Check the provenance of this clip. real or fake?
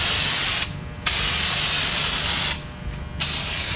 real